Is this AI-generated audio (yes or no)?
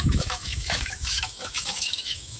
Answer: yes